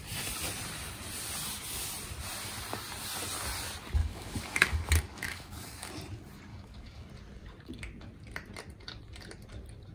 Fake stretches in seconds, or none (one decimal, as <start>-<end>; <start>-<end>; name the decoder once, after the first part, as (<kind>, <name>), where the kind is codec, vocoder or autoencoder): 4.0-5.9 (codec, DAC); 6.5-7.1